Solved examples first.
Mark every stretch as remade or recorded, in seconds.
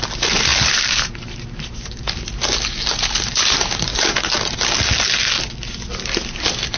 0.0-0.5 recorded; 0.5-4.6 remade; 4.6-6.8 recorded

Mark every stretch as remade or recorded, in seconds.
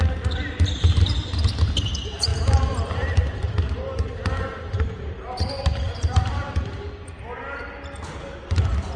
0.0-2.3 recorded; 2.3-7.2 remade; 7.2-9.0 recorded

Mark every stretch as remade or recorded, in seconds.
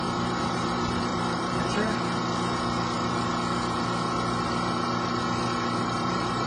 0.0-1.9 remade; 1.9-5.8 recorded; 5.8-6.5 remade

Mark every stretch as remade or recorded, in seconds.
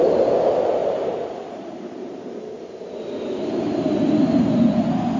0.0-0.8 recorded; 0.8-3.9 remade; 3.9-5.2 recorded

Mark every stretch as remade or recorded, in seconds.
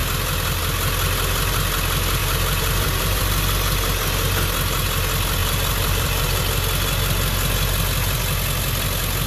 0.0-2.2 recorded; 2.2-3.2 remade; 3.2-5.4 recorded; 5.4-6.4 remade; 6.4-9.3 recorded